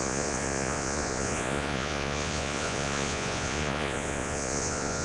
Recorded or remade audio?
remade